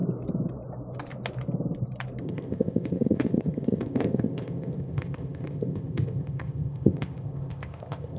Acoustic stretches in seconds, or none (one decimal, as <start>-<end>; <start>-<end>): 0.0-2.2